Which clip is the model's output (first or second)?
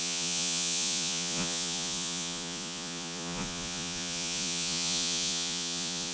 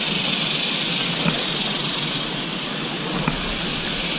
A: first